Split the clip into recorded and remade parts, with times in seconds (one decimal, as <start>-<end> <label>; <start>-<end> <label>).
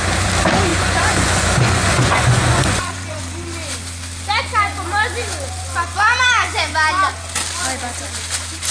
0.0-0.7 recorded; 0.7-3.2 remade; 3.2-8.7 recorded